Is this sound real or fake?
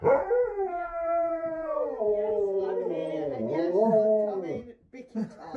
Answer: fake